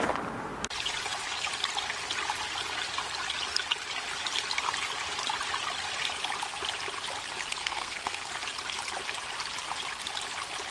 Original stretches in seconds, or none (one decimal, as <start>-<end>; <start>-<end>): 0.0-7.6; 8.3-10.7